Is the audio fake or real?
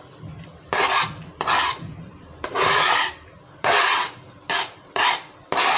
fake